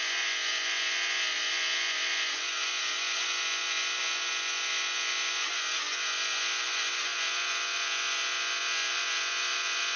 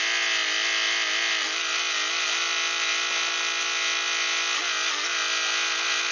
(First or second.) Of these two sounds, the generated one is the first